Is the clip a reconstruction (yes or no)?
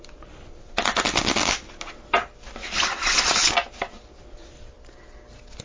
no